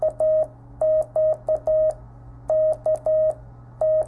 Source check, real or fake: real